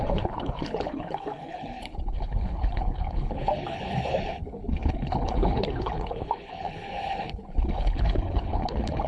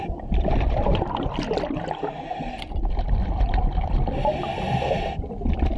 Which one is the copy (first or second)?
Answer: first